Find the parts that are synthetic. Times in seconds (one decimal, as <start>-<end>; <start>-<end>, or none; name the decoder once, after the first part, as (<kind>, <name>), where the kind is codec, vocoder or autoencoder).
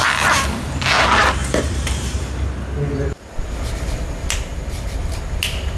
1.4-2.2 (vocoder, BigVGAN v2)